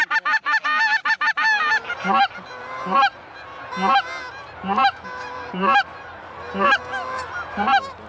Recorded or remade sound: recorded